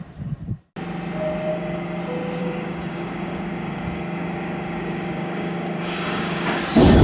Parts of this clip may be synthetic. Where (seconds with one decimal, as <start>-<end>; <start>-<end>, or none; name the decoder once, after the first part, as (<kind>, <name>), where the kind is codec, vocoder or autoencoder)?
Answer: 1.5-2.0 (codec, DAC); 2.4-6.6